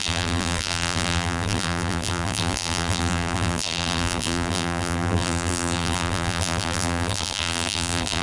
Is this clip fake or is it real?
fake